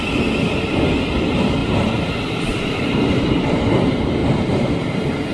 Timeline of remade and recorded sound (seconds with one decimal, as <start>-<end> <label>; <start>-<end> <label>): 0.0-1.6 recorded; 1.6-3.7 remade; 3.7-4.2 recorded; 4.2-4.7 remade; 4.7-5.3 recorded